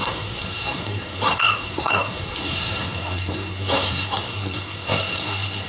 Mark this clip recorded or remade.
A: remade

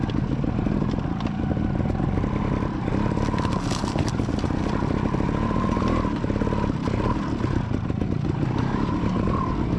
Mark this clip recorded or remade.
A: recorded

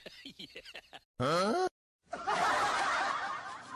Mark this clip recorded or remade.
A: recorded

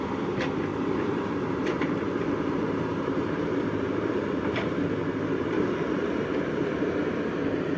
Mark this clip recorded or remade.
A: remade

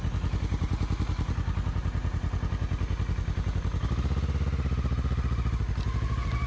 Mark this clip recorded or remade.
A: recorded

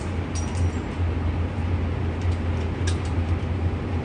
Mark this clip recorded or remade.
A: recorded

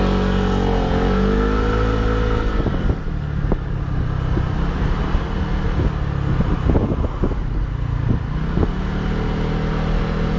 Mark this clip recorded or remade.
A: recorded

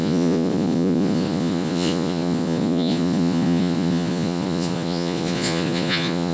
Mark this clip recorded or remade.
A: remade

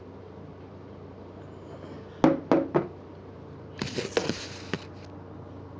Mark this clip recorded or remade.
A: recorded